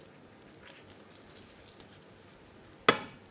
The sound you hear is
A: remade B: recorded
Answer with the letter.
B